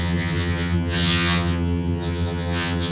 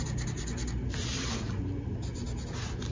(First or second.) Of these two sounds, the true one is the second